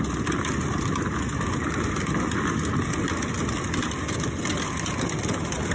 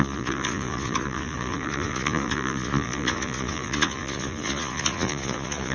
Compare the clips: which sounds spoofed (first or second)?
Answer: second